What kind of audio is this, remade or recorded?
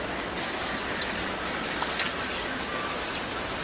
recorded